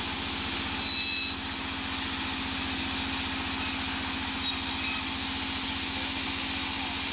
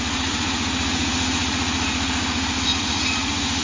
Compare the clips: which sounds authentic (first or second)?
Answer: first